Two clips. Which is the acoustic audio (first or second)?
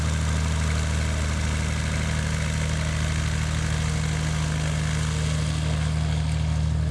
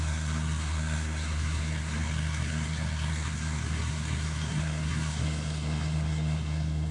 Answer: first